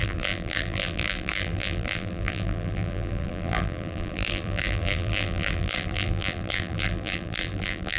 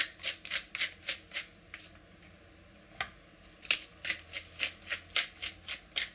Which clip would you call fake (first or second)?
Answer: first